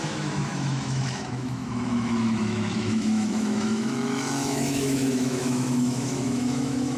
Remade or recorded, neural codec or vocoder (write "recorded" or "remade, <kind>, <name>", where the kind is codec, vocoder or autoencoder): remade, autoencoder, DAC-VAE